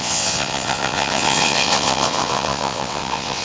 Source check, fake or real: fake